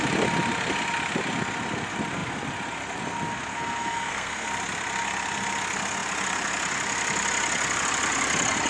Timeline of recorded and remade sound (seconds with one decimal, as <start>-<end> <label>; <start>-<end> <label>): 0.0-3.5 recorded; 3.5-4.5 remade; 4.5-8.7 recorded